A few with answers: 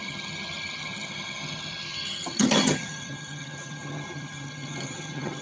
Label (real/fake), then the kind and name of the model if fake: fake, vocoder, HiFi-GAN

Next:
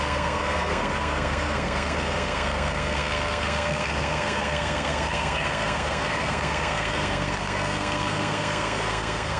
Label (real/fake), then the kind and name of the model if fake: fake, codec, SNAC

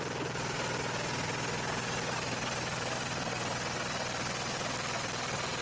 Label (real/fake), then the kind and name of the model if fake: real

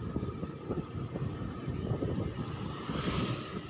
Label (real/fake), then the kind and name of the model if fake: fake, vocoder, BigVGAN v2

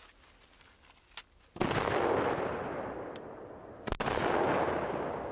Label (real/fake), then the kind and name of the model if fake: real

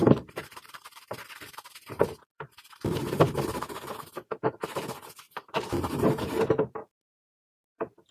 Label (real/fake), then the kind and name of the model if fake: fake, vocoder, BigVGAN v2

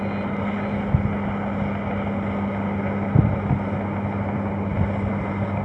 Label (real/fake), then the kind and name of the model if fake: real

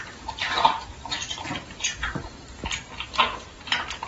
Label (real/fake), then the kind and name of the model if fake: real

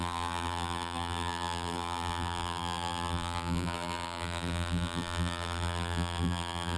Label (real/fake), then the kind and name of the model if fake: fake, vocoder, BigVGAN v2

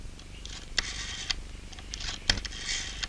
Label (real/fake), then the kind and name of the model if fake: real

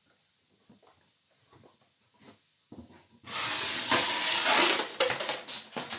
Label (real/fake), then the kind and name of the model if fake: real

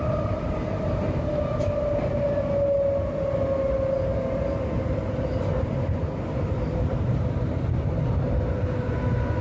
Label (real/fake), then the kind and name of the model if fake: real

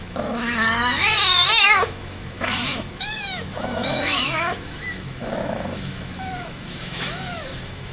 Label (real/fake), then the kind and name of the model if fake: fake, autoencoder, DAC-VAE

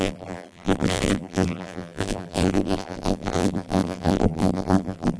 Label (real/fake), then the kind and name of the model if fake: fake, vocoder, BigVGAN v2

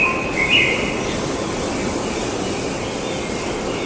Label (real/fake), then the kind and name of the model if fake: real